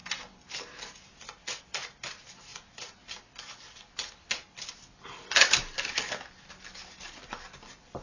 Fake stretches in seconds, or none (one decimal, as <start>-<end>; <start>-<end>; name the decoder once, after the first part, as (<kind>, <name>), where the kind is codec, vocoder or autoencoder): none